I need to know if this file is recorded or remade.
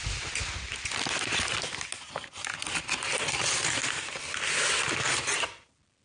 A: recorded